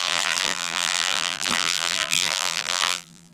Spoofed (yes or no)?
yes